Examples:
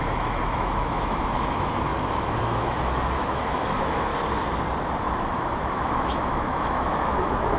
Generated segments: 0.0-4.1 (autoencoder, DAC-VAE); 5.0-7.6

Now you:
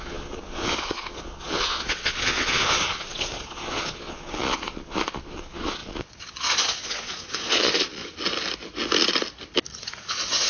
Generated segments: 0.0-8.0 (vocoder, Vocos); 9.8-10.5

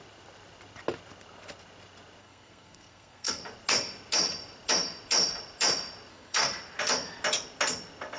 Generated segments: 2.2-3.4 (codec, SNAC); 6.1-6.6

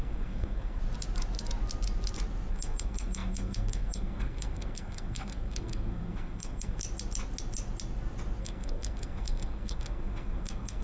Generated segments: 0.0-0.8 (codec, SNAC); 2.5-6.8; 8.4-10.8